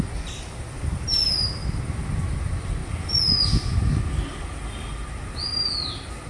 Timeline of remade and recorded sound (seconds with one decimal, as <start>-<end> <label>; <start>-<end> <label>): 0.0-6.3 recorded